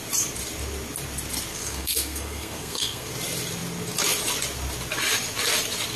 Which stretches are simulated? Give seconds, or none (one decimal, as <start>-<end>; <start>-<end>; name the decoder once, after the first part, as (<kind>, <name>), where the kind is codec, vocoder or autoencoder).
1.5-3.1 (codec, SNAC)